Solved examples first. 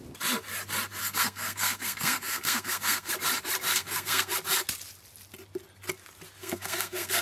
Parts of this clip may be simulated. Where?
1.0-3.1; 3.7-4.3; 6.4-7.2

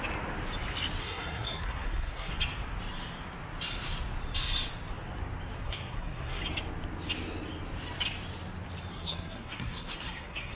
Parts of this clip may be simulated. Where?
1.0-2.3; 5.6-6.4; 8.9-10.6

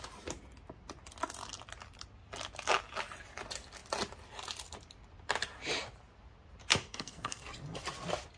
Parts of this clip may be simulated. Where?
6.7-7.4

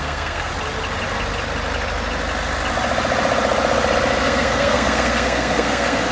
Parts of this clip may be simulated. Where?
0.0-0.5; 4.2-6.1

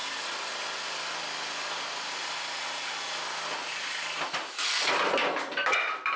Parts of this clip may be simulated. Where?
none

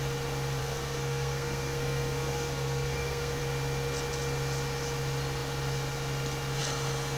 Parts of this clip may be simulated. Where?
0.6-3.4